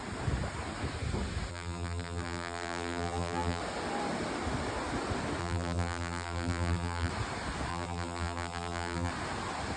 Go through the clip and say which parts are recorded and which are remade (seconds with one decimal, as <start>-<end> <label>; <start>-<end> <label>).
0.0-1.5 recorded; 1.5-3.6 remade; 3.6-5.4 recorded; 5.4-7.1 remade; 7.1-7.7 recorded; 7.7-9.1 remade; 9.1-9.8 recorded